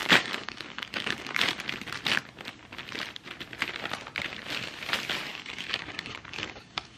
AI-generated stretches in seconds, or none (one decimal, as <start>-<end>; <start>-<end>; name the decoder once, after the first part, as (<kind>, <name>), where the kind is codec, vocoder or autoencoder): 0.0-1.4 (codec, DAC); 5.3-7.0